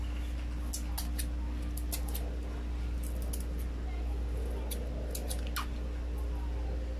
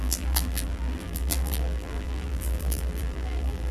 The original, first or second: first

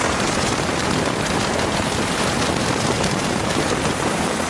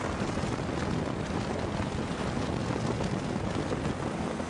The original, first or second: second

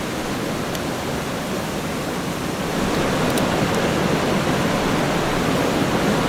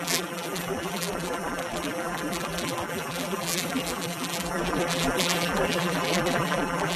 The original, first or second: first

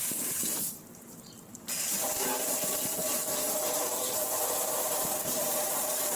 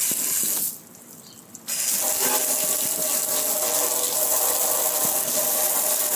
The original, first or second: second